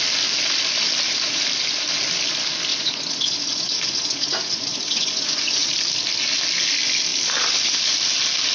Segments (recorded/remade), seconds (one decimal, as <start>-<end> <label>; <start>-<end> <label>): 0.0-2.7 recorded; 2.7-5.7 remade; 5.7-8.5 recorded